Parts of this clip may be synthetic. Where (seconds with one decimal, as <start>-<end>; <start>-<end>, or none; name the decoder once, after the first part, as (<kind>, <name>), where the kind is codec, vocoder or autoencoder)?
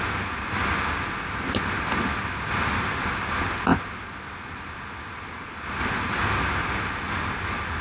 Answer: none